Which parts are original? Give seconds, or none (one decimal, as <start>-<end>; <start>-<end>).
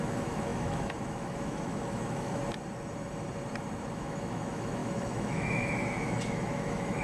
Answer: 2.4-3.9